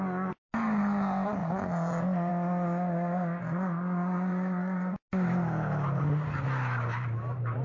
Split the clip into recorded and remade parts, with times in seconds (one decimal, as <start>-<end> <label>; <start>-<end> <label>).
0.0-7.6 recorded